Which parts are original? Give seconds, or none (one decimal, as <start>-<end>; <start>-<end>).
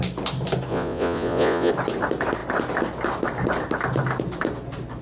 0.0-0.7; 1.7-5.0